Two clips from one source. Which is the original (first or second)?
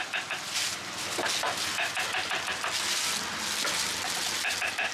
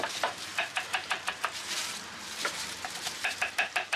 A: first